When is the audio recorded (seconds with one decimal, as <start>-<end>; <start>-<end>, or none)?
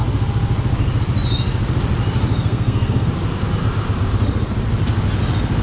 0.0-2.3; 3.1-5.6